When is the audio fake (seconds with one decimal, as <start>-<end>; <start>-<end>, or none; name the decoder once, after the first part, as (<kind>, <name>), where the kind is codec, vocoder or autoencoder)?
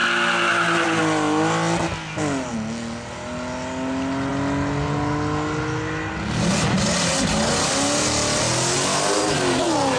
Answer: none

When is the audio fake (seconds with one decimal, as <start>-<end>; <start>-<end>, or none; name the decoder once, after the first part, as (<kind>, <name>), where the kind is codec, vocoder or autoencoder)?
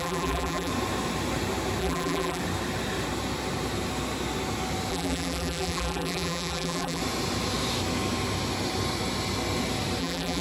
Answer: 0.0-0.7 (vocoder, BigVGAN v2); 1.8-2.4; 4.9-7.0; 10.0-10.4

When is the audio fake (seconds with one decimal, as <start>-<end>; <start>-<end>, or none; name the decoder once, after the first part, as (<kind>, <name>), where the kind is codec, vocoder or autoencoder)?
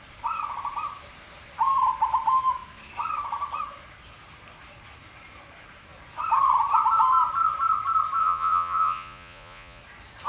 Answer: 8.2-9.8 (vocoder, Vocos)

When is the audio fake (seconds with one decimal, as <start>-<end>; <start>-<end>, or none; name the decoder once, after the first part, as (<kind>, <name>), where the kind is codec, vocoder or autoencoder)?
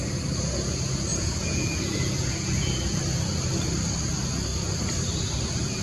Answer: 1.1-3.0 (vocoder, Vocos)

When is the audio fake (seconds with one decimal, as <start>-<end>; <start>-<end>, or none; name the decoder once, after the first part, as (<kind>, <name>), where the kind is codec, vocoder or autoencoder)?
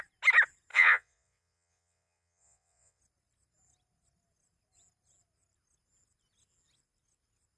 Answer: 0.7-3.0 (vocoder, WaveNeXt)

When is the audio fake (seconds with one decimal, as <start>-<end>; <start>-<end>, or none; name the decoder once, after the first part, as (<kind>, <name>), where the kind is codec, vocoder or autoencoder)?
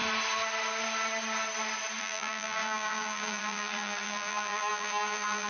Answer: 2.0-5.5 (vocoder, BigVGAN v2)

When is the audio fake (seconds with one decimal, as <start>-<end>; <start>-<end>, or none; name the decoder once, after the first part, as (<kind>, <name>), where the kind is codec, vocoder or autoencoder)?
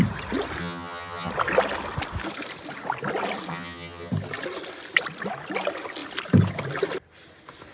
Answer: 0.6-1.3 (vocoder, HiFi-GAN); 3.5-4.1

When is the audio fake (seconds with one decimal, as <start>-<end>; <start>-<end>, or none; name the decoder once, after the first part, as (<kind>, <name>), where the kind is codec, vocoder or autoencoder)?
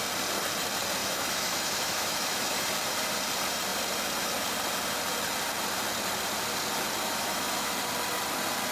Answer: 1.0-2.7 (autoencoder, DAC-VAE); 7.0-7.7